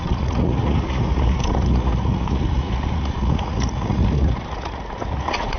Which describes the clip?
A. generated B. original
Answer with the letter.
A